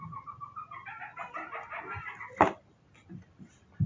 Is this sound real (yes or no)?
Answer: yes